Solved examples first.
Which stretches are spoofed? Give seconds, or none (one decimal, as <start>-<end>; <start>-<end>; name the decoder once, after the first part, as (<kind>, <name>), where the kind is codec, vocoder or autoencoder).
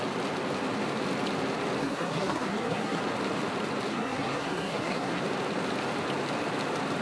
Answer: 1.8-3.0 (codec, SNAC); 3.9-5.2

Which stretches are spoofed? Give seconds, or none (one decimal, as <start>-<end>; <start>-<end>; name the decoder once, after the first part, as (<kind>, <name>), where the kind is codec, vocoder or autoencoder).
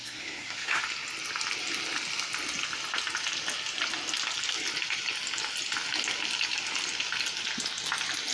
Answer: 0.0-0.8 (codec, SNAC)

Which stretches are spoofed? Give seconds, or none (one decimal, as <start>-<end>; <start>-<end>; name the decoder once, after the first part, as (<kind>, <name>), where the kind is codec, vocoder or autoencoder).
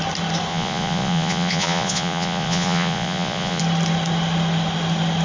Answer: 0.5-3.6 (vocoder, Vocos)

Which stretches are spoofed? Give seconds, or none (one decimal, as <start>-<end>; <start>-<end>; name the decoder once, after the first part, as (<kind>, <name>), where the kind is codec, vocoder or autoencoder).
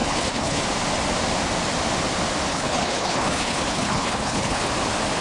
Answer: 0.0-0.6 (codec, HILCodec); 2.5-4.7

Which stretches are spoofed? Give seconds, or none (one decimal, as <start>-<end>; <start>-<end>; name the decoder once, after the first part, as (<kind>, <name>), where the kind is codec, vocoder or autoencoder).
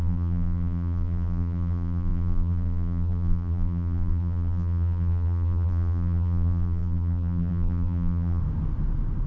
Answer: 0.0-8.4 (vocoder, BigVGAN v2)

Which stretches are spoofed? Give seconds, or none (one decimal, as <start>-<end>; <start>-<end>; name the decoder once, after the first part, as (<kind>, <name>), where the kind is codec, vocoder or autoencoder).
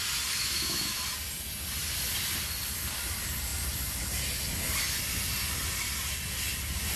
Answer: 0.4-1.0 (autoencoder, DAC-VAE)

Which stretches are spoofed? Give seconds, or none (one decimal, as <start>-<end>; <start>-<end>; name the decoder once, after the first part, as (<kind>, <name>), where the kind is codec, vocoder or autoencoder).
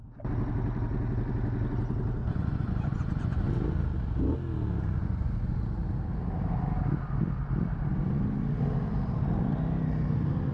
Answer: 2.2-3.5 (vocoder, Vocos); 5.0-5.6; 7.9-8.4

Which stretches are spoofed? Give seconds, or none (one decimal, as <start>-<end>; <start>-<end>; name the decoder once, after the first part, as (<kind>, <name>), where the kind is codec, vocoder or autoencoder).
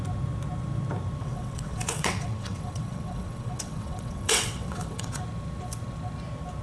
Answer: 1.2-5.2 (vocoder, WaveNeXt)